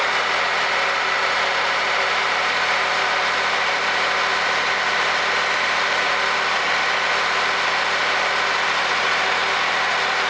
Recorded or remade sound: recorded